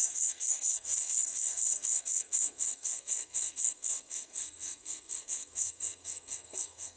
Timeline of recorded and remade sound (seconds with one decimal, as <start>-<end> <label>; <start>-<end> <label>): 0.0-7.0 remade